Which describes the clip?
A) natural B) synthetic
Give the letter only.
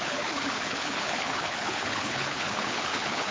B